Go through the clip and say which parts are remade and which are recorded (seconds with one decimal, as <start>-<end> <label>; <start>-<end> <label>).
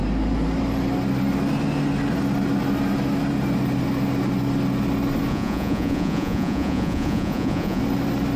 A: 0.0-5.3 recorded; 5.3-7.8 remade; 7.8-8.4 recorded